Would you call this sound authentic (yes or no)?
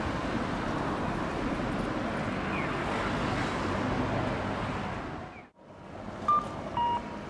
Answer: yes